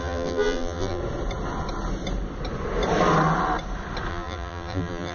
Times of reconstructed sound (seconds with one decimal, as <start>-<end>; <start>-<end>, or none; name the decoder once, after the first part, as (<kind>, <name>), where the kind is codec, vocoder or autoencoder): 0.0-1.0 (vocoder, BigVGAN v2); 4.1-5.1